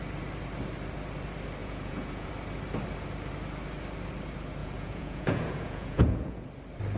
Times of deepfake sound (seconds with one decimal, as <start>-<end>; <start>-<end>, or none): 1.6-2.3; 4.6-6.4